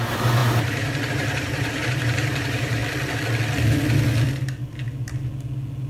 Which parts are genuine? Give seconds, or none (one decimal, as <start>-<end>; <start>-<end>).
2.8-5.9